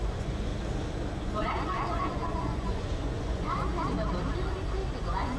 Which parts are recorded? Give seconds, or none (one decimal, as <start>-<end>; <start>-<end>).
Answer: 0.5-1.2; 3.7-5.0